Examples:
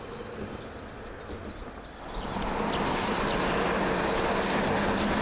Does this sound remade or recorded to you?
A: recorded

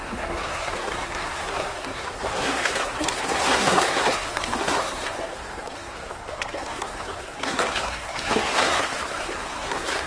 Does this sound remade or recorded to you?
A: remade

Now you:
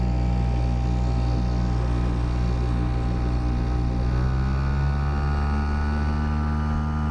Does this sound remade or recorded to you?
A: recorded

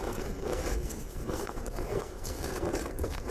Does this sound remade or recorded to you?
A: remade